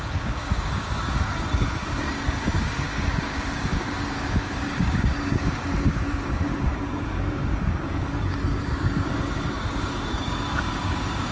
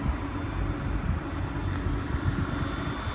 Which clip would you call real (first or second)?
second